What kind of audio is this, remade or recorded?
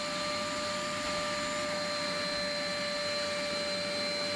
recorded